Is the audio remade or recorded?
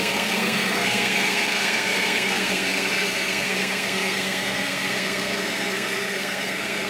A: remade